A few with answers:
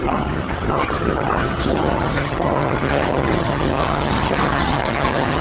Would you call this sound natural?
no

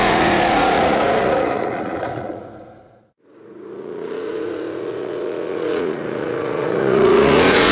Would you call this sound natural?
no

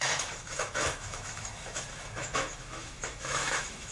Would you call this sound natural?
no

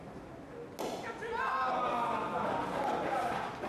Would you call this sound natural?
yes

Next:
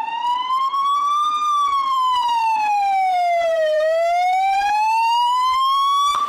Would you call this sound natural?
no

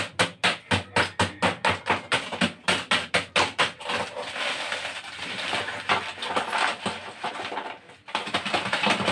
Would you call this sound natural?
yes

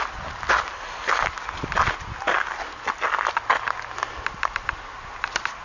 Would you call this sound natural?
yes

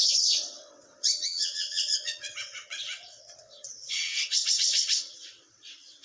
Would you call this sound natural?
no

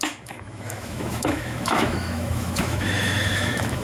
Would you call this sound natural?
no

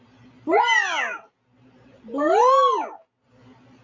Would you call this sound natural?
yes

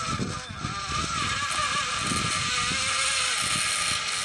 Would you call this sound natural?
yes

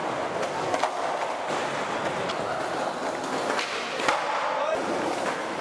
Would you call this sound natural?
yes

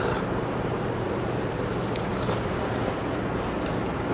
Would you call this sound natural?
yes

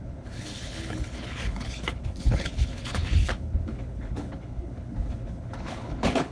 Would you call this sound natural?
no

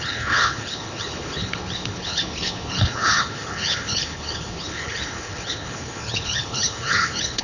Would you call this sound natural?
no